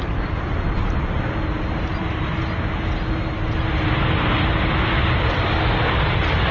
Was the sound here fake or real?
real